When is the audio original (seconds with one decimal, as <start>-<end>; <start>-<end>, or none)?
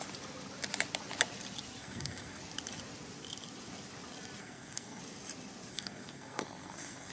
0.0-1.8; 2.4-4.4; 5.0-5.7